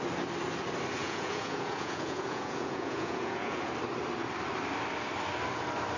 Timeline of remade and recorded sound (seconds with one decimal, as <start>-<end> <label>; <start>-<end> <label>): 0.0-1.0 recorded; 1.0-3.7 remade; 3.7-6.0 recorded